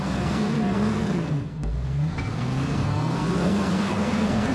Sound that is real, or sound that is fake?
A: fake